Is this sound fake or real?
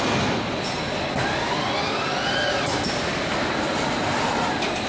real